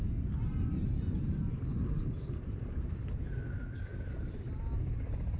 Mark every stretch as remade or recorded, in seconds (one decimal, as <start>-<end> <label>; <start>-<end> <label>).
0.0-3.2 remade; 3.2-5.4 recorded

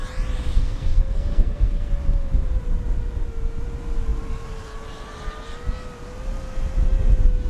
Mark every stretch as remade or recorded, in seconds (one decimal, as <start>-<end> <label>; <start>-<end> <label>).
0.0-0.5 recorded; 0.5-1.9 remade; 1.9-7.5 recorded